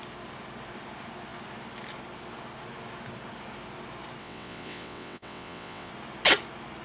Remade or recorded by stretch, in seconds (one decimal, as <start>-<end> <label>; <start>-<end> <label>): 0.0-4.2 recorded; 4.2-5.9 remade; 5.9-6.8 recorded